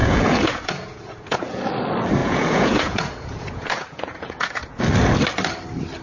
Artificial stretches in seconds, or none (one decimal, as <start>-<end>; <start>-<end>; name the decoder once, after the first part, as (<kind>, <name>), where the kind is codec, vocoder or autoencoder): 0.0-1.6 (vocoder, Vocos); 2.2-4.8